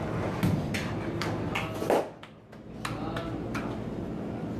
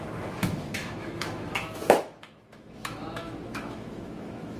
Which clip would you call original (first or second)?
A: first